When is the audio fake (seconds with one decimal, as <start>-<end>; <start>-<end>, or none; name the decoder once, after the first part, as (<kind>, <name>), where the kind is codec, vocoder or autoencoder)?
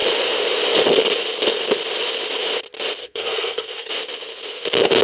3.0-3.9 (codec, SNAC)